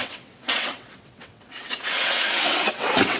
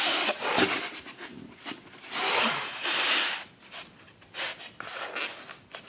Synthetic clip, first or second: first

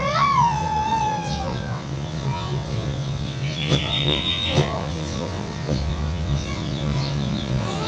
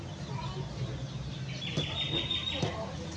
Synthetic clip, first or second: first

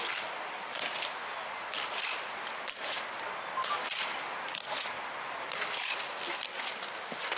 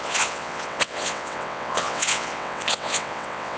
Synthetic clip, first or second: second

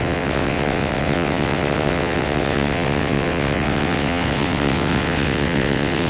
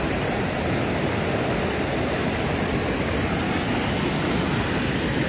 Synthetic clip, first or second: first